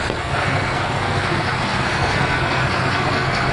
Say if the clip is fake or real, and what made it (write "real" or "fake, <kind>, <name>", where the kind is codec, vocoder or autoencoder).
fake, codec, SNAC